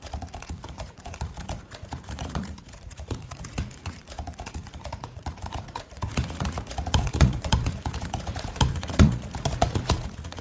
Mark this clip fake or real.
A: fake